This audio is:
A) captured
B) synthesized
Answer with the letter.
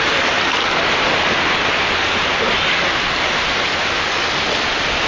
A